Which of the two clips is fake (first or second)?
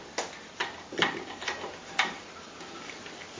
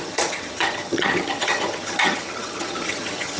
second